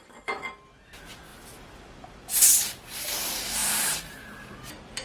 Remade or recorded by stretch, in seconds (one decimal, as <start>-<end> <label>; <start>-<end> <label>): 0.0-3.6 recorded; 3.6-4.2 remade; 4.2-5.0 recorded